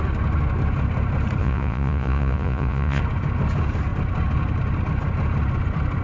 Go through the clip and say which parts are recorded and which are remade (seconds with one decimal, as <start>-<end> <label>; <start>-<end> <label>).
0.0-1.4 recorded; 1.4-3.0 remade; 3.0-6.0 recorded